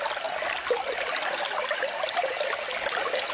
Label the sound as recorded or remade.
recorded